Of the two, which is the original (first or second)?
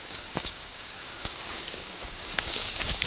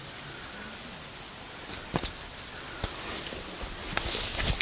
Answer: second